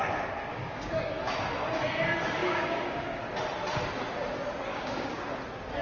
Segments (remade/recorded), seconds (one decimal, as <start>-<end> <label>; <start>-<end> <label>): 0.0-0.5 recorded; 0.5-1.3 remade; 1.3-2.4 recorded; 2.4-3.2 remade; 3.2-4.7 recorded; 4.7-5.2 remade; 5.2-5.8 recorded